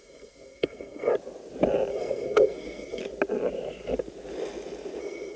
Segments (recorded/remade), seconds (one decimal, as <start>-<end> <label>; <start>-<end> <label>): 0.0-1.1 remade; 1.1-1.9 recorded; 1.9-3.0 remade; 3.0-5.0 recorded; 5.0-5.4 remade